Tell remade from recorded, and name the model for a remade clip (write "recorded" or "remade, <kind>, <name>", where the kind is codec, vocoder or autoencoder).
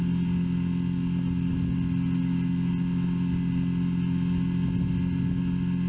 recorded